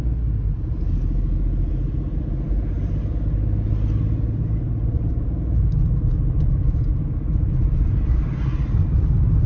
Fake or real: real